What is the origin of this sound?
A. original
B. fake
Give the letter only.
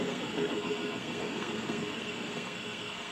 B